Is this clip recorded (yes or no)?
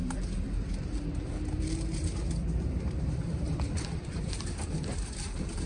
no